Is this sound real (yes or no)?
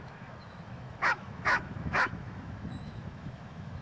no